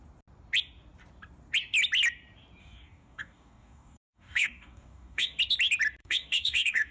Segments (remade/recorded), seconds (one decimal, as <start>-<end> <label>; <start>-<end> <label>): 0.0-2.6 recorded; 2.6-5.4 remade; 5.4-6.0 recorded; 6.0-6.9 remade